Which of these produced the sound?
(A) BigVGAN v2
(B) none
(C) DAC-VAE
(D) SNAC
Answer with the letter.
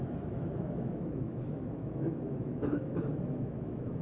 C